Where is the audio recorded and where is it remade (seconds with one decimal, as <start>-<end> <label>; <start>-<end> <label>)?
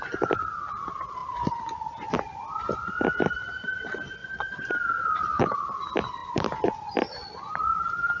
0.0-4.2 recorded; 4.2-4.7 remade; 4.7-8.2 recorded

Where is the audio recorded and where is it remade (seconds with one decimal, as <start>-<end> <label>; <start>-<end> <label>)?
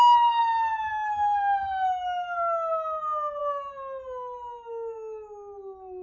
0.0-6.0 recorded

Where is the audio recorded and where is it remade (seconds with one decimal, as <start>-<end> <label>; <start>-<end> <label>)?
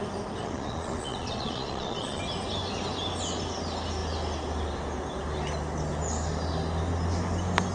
0.0-0.4 recorded; 0.4-2.2 remade; 2.2-7.7 recorded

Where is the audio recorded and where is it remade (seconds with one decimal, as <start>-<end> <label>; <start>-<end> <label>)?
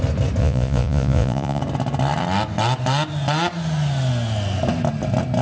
0.0-0.4 recorded; 0.4-1.6 remade; 1.6-5.4 recorded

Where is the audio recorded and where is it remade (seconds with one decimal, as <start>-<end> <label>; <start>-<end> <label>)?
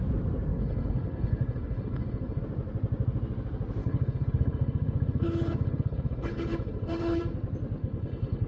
0.0-0.5 recorded; 0.5-2.4 remade; 2.4-3.8 recorded; 3.8-7.2 remade; 7.2-7.8 recorded; 7.8-8.5 remade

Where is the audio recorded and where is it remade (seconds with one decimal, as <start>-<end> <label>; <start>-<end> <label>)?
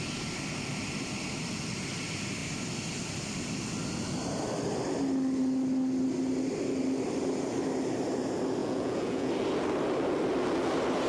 0.0-8.6 recorded; 8.6-9.3 remade; 9.3-11.1 recorded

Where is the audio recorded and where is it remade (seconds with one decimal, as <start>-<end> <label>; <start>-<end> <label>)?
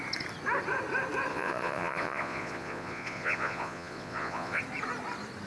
0.0-1.3 recorded; 1.3-4.6 remade; 4.6-5.5 recorded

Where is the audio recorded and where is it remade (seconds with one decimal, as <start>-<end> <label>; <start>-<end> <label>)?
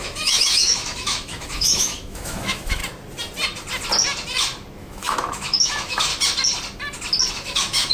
0.0-2.8 remade; 2.8-4.8 recorded; 4.8-6.1 remade; 6.1-7.3 recorded; 7.3-7.9 remade